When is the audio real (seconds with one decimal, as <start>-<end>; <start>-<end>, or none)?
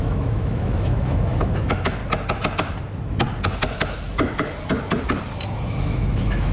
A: 2.0-5.8